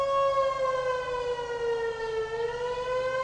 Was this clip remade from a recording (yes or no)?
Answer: no